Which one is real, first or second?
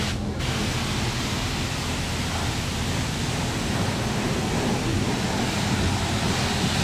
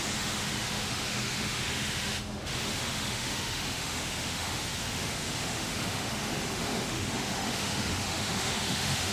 first